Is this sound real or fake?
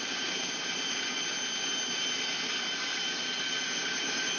real